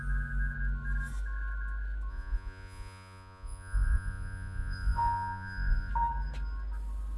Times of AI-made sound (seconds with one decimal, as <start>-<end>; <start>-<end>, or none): 2.1-5.9